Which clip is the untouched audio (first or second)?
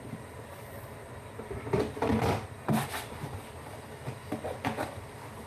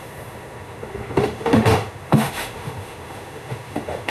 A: first